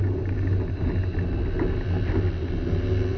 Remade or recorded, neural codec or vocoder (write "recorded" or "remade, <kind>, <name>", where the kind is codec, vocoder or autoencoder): recorded